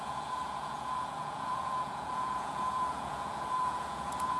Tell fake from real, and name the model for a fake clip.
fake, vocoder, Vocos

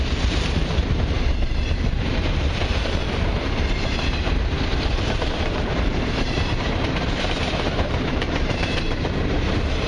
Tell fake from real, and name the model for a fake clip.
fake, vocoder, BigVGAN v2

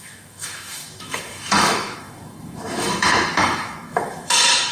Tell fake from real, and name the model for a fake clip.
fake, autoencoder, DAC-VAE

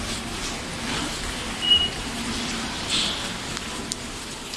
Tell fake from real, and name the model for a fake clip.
fake, vocoder, BigVGAN v2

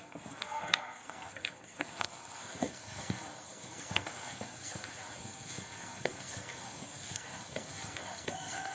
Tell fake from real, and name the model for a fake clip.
fake, codec, SNAC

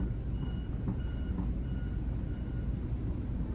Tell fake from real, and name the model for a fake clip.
real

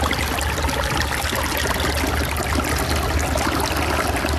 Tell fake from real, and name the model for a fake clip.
real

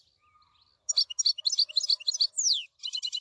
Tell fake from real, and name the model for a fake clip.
real